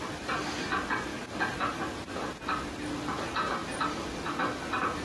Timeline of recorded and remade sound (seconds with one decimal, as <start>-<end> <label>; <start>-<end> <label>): 0.0-5.0 recorded